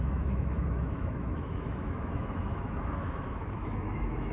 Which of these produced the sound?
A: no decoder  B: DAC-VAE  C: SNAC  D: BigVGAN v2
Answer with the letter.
B